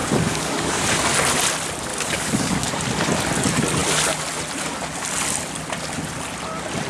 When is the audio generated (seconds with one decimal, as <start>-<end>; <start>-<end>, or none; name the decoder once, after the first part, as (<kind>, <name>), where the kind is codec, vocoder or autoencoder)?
0.0-0.8 (codec, DAC); 1.9-2.7